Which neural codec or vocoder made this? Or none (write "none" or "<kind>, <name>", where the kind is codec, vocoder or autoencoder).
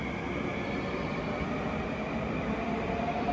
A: none